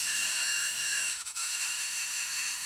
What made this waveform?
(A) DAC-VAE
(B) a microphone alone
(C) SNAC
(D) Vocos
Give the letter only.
A